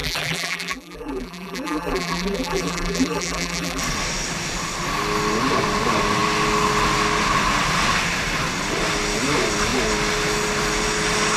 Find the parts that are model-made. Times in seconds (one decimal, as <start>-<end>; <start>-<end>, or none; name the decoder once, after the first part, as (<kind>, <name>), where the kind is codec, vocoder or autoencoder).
0.0-3.8 (vocoder, BigVGAN v2)